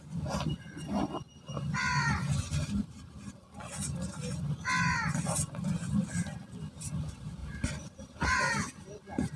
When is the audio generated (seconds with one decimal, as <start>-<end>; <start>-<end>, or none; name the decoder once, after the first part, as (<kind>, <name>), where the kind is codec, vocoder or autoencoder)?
7.4-8.4 (vocoder, BigVGAN v2)